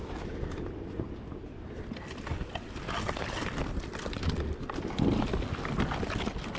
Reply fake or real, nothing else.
real